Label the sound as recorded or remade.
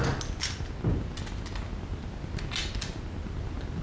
recorded